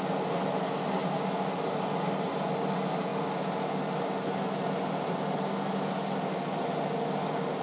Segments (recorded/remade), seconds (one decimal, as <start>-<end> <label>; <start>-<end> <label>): 0.0-7.6 recorded

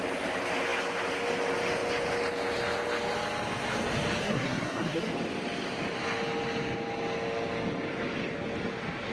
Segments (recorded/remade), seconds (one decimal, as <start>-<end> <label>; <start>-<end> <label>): 0.0-4.2 recorded; 4.2-5.1 remade; 5.1-9.1 recorded

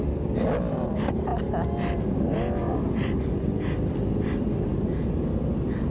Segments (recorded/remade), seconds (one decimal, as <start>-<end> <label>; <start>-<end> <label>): 0.0-5.9 recorded

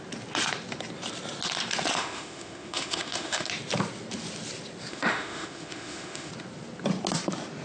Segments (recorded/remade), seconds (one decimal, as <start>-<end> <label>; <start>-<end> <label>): 0.0-1.9 recorded; 1.9-3.5 remade; 3.5-4.9 recorded; 4.9-6.3 remade; 6.3-7.6 recorded

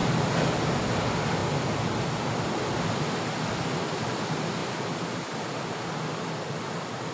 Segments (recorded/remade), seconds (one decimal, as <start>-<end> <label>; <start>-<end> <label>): 0.0-7.1 recorded

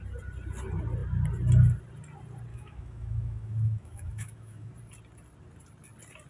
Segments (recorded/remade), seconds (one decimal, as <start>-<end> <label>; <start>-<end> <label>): 0.0-2.5 recorded; 2.5-4.7 remade; 4.7-6.3 recorded

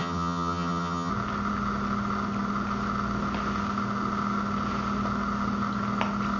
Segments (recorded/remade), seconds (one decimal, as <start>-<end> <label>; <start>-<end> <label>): 0.0-1.1 remade; 1.1-6.4 recorded

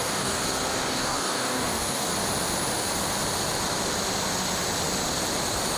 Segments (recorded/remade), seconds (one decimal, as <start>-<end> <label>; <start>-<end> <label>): 0.0-0.4 remade; 0.4-0.9 recorded; 0.9-2.1 remade; 2.1-5.8 recorded